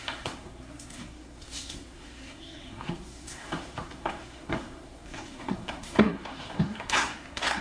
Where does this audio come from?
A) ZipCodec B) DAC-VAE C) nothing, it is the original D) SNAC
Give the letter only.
D